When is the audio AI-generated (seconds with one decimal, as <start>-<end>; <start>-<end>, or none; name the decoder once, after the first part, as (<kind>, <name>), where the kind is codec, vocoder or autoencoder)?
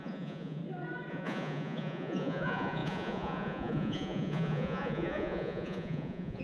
0.0-0.6 (vocoder, Vocos); 1.1-6.4